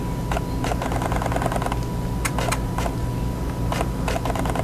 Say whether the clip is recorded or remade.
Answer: recorded